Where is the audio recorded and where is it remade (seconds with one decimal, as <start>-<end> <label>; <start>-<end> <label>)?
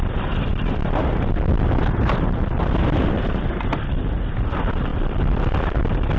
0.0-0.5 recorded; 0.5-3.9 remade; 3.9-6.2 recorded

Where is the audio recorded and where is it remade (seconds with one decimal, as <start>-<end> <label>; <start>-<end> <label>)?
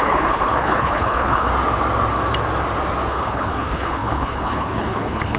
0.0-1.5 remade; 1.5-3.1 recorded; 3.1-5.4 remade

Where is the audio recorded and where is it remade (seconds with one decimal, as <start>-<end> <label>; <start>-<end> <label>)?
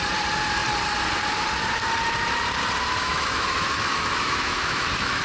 0.0-3.0 recorded; 3.0-5.2 remade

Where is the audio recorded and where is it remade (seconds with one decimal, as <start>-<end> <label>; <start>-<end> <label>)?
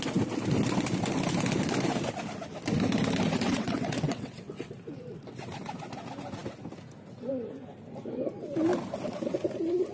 0.0-3.5 recorded; 3.5-4.7 remade; 4.7-9.9 recorded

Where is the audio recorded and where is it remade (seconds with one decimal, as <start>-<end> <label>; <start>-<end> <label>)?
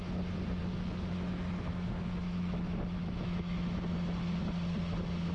0.0-0.6 recorded; 0.6-3.8 remade; 3.8-5.3 recorded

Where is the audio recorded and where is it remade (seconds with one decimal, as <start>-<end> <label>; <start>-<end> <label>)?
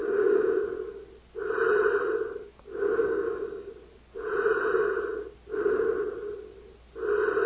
0.0-0.6 remade; 0.6-3.0 recorded; 3.0-3.7 remade; 3.7-7.5 recorded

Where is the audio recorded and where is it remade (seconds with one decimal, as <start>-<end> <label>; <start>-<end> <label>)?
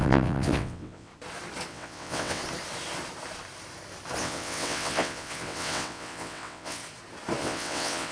0.0-1.1 remade; 1.1-1.7 recorded; 1.7-2.4 remade; 2.4-4.2 recorded; 4.2-6.8 remade; 6.8-7.4 recorded; 7.4-8.1 remade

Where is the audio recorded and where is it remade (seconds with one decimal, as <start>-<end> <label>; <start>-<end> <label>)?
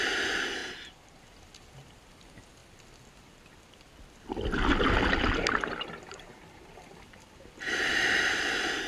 0.0-8.9 recorded